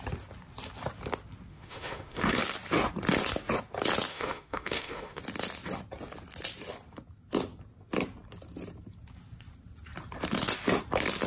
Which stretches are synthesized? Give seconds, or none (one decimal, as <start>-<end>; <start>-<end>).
1.5-2.4; 4.1-5.2